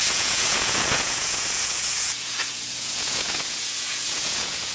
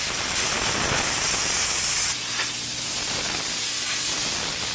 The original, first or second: second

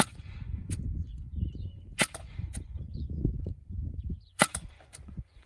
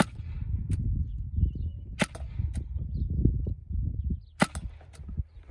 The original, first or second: second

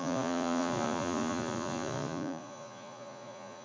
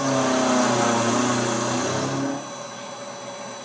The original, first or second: second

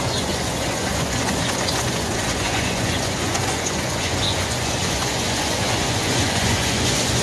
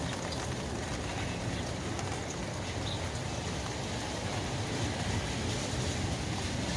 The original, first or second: second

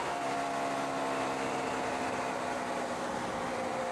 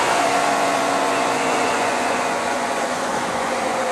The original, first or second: first